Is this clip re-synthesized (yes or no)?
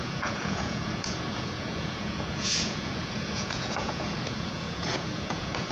yes